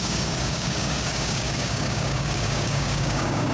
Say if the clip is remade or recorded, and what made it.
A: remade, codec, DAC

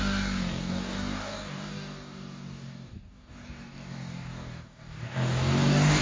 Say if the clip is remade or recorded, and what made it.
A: remade, codec, DAC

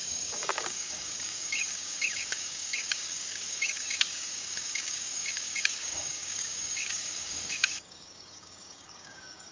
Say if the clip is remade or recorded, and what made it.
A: remade, codec, DAC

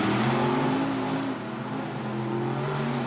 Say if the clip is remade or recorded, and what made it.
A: recorded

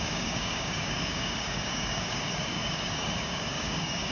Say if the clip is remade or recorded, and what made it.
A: remade, codec, DAC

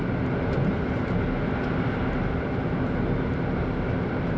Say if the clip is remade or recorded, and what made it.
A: recorded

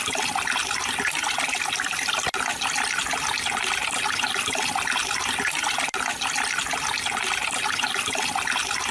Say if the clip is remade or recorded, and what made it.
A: recorded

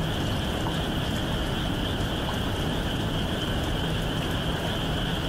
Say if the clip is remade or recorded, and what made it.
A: recorded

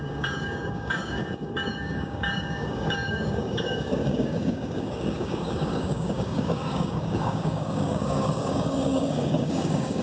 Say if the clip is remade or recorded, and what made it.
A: remade, codec, DAC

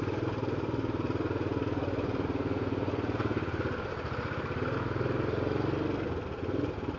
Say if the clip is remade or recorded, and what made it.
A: recorded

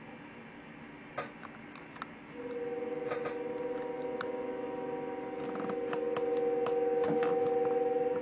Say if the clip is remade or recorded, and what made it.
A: recorded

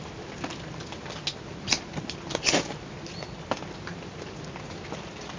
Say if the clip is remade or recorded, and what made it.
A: recorded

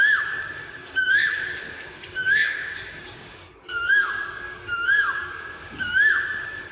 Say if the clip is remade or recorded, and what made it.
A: remade, codec, DAC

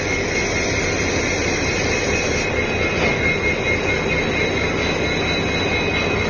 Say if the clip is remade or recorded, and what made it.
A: recorded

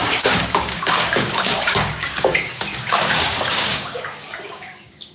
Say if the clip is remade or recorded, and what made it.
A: remade, codec, DAC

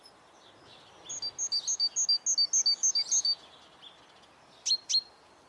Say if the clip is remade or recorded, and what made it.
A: recorded